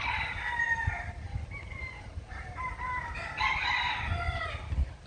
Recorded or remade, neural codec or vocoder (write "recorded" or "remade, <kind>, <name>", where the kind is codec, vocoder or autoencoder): recorded